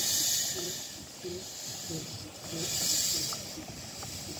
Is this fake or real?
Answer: real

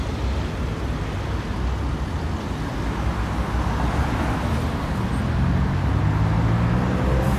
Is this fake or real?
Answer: real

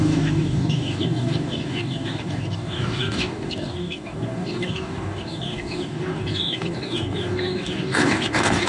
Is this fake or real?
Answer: fake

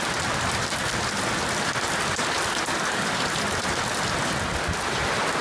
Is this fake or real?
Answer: real